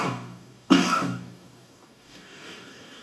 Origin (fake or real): fake